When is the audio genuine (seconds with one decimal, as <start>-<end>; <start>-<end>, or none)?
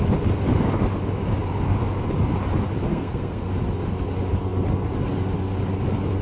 0.0-2.9; 3.4-6.2